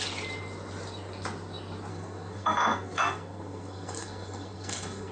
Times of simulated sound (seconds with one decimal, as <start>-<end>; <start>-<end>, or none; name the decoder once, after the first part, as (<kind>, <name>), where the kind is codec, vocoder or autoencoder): 1.9-5.1 (codec, SNAC)